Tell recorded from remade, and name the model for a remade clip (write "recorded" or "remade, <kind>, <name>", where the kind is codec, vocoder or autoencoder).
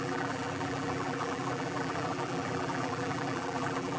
remade, vocoder, BigVGAN v2